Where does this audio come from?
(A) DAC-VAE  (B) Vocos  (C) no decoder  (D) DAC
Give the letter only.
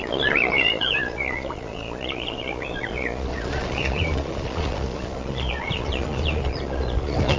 B